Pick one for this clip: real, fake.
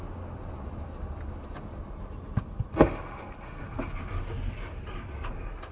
real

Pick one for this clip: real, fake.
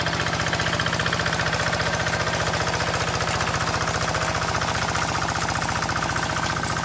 real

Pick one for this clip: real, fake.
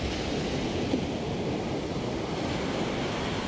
real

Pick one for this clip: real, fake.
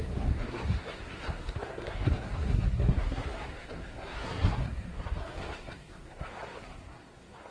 fake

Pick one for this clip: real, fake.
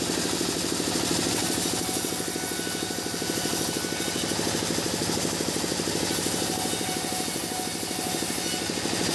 real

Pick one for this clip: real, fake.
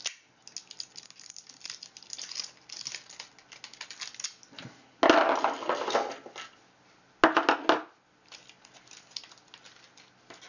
real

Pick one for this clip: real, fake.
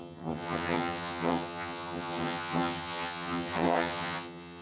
fake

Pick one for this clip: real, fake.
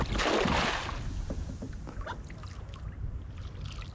real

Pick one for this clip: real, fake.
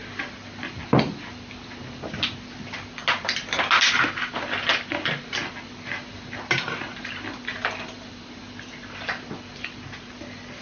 real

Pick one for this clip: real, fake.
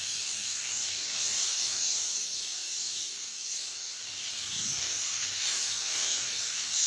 fake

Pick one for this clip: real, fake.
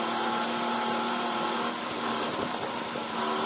real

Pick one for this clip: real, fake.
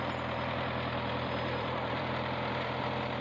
fake